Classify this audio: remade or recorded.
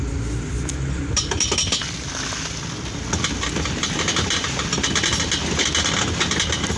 recorded